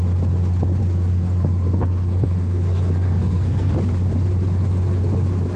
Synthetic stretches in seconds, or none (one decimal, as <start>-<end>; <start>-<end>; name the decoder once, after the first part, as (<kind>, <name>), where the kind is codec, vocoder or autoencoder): 0.8-3.7 (codec, SNAC)